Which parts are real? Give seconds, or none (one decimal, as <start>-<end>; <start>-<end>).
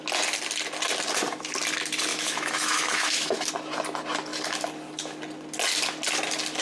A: 0.0-2.1; 3.5-6.6